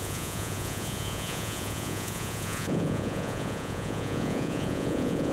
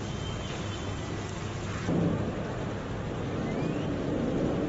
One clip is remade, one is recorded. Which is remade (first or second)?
first